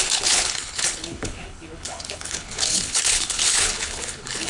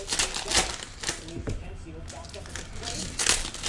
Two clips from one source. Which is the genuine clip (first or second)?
second